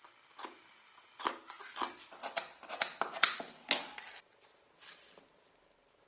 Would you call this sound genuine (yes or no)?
yes